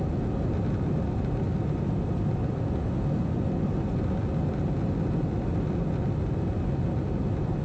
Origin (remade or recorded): recorded